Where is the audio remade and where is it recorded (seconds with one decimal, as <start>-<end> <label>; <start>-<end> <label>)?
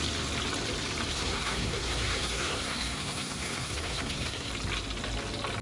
0.0-1.1 recorded; 1.1-4.5 remade; 4.5-5.6 recorded